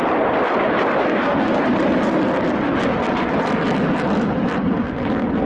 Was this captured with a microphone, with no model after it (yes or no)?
yes